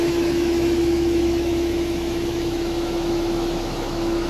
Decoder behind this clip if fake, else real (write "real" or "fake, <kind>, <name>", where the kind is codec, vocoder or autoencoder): fake, autoencoder, DAC-VAE